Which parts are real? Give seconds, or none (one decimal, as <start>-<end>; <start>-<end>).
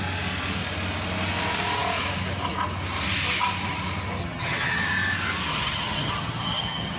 0.0-4.2; 4.8-5.5